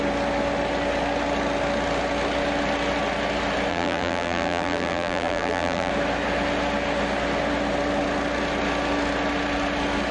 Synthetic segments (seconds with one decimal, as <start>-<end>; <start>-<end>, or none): 3.7-5.9